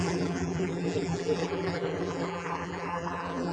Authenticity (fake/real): fake